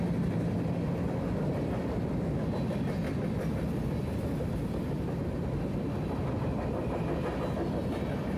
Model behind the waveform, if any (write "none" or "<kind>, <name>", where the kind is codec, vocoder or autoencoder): none